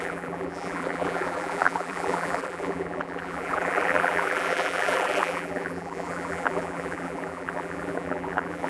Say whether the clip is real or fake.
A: fake